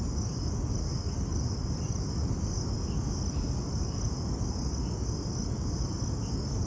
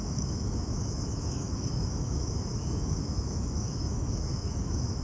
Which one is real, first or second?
first